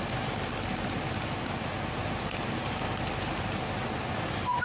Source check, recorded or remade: recorded